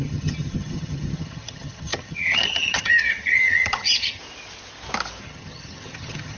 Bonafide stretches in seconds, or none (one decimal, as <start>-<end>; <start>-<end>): 4.2-5.2